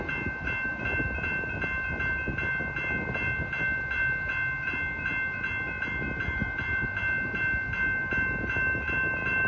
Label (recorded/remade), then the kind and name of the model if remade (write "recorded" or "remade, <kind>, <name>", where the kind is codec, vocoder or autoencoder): recorded